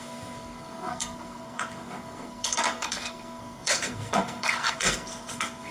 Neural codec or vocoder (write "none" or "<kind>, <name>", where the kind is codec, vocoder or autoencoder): codec, SNAC